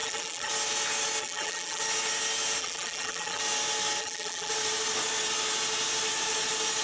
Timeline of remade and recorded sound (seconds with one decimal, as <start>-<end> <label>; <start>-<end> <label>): 0.0-0.5 remade; 0.5-1.2 recorded; 1.2-1.8 remade; 1.8-2.6 recorded; 2.6-3.4 remade; 3.4-4.0 recorded; 4.0-4.5 remade; 4.5-6.8 recorded